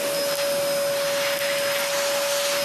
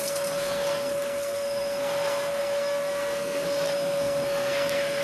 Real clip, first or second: first